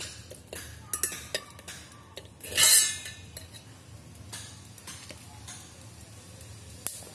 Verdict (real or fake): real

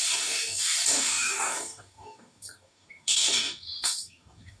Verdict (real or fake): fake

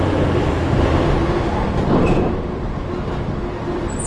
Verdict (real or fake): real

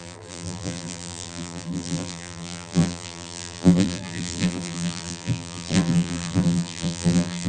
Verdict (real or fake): fake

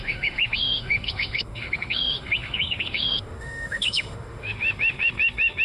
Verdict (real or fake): fake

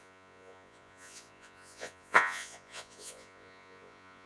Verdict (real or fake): fake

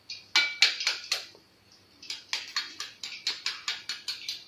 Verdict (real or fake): real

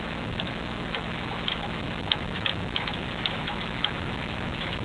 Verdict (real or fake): fake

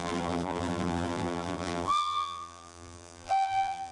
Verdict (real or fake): fake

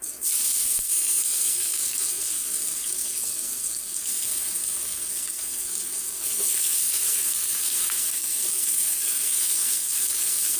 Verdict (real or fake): fake